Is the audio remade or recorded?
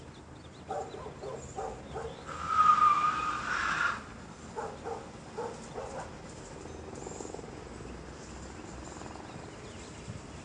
recorded